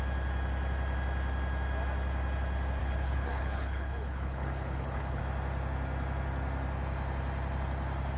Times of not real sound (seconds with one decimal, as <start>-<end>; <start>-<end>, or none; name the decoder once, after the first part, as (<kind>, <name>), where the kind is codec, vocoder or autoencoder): 2.8-5.2 (codec, HILCodec)